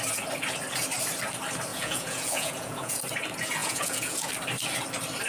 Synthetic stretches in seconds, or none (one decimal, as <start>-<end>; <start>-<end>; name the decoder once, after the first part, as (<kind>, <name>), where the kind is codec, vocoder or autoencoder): 1.7-3.0 (vocoder, Vocos); 3.6-4.3